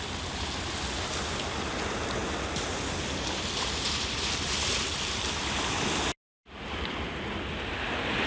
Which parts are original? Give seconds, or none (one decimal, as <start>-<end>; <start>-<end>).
0.0-8.3